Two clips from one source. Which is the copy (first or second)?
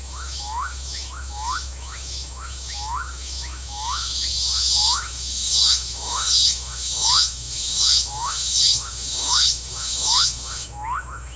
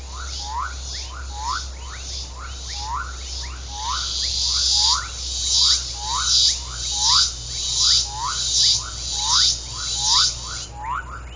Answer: first